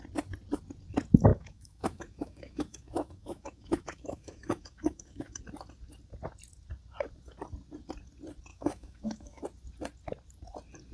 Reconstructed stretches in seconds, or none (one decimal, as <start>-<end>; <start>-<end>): 1.3-5.4; 8.5-9.4

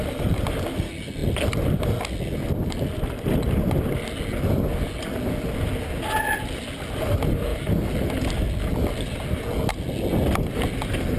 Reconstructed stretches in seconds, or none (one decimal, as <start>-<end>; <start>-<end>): none